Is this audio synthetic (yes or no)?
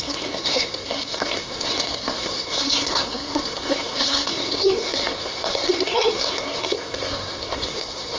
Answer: yes